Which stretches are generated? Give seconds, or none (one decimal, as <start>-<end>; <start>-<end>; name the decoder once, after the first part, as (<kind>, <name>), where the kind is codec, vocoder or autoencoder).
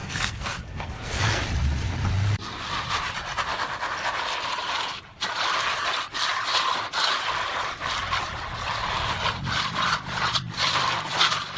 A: 0.0-1.4 (codec, SNAC)